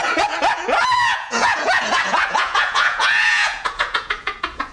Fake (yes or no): yes